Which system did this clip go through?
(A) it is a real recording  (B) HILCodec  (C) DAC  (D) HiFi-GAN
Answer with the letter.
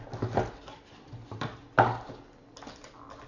A